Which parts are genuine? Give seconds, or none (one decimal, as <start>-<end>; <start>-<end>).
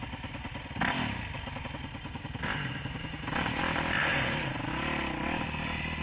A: 0.0-6.0